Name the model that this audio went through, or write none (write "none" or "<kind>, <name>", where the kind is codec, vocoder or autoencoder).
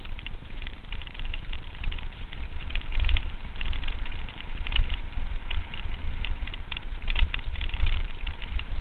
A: vocoder, BigVGAN v2